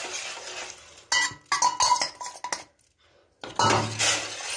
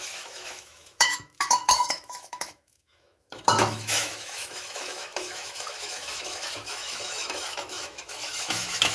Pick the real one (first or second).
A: first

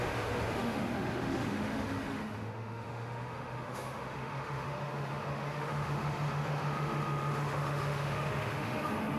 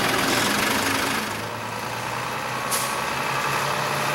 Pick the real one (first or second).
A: second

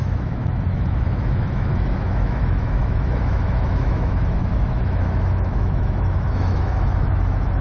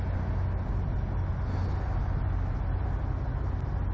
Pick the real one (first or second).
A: second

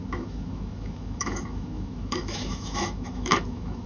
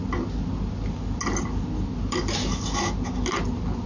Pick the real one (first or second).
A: second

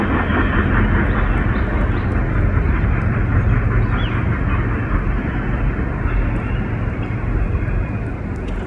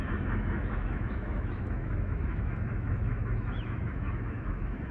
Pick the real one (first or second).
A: first